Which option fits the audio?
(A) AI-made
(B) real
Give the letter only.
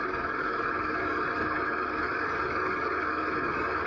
A